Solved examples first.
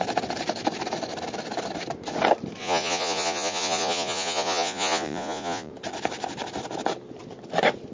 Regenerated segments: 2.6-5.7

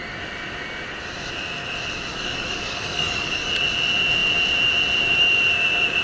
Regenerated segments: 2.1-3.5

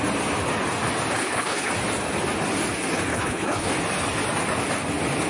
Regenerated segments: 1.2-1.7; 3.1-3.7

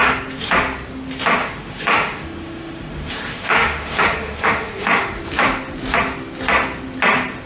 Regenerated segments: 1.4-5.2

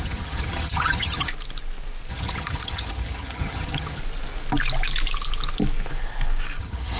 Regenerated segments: 0.0-1.3; 2.1-4.0; 6.6-7.0

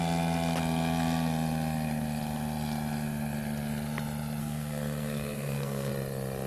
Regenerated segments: 4.4-5.9

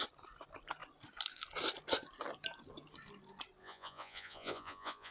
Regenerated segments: 3.6-5.1

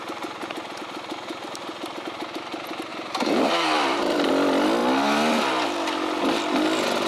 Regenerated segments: 2.9-4.3